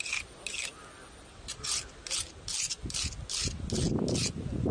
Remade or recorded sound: recorded